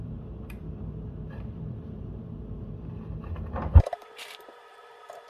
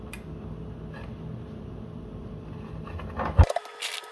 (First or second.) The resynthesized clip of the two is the first